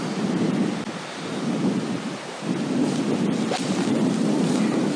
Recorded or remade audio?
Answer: recorded